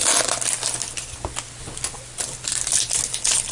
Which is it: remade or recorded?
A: recorded